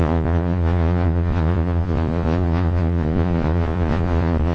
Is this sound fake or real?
fake